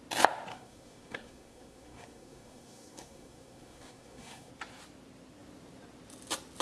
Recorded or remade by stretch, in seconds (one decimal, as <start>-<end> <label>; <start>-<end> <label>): 0.0-0.5 recorded; 0.5-4.5 remade; 4.5-6.6 recorded